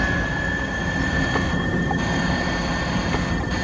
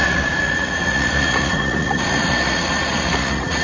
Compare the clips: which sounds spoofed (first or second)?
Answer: second